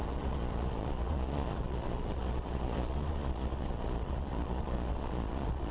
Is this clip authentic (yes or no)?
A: no